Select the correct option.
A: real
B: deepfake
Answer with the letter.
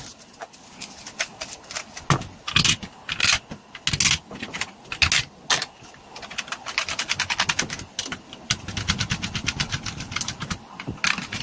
A